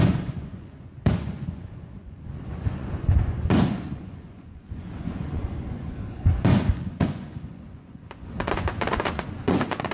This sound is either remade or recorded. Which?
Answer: remade